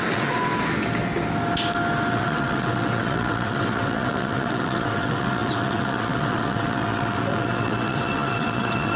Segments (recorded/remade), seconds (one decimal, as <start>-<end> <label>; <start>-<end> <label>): 0.0-0.5 remade; 0.5-2.1 recorded; 2.1-9.0 remade